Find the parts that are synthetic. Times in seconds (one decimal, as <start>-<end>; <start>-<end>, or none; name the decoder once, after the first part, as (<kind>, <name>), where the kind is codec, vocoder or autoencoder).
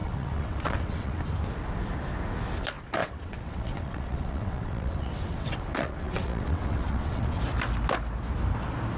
0.0-1.2 (vocoder, WaveNeXt); 3.0-7.4